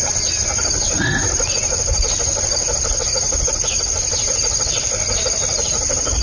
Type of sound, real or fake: real